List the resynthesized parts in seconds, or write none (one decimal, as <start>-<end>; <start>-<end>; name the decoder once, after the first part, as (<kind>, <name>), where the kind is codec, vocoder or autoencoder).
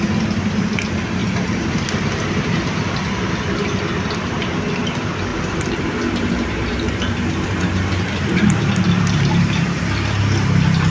1.2-1.7 (vocoder, BigVGAN v2); 5.3-9.8